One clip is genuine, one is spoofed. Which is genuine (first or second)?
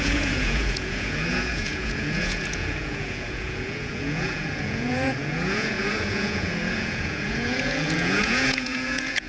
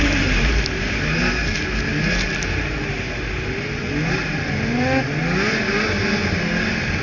second